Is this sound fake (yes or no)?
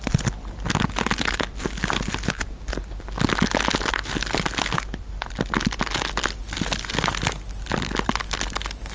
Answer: no